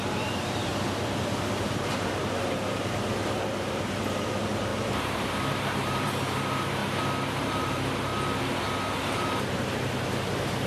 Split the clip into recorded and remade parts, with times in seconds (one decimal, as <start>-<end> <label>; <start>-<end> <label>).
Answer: 0.0-0.7 remade; 0.7-1.5 recorded; 1.5-6.8 remade; 6.8-7.4 recorded; 7.4-8.1 remade; 8.1-9.0 recorded; 9.0-10.7 remade